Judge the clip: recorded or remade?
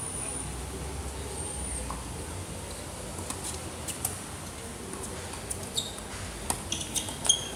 recorded